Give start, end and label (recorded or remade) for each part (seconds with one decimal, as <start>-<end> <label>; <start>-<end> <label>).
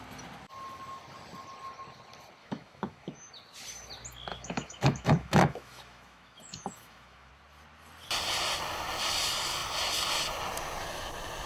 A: 0.0-2.4 recorded; 2.4-3.3 remade; 3.3-4.3 recorded; 4.3-7.3 remade; 7.3-11.5 recorded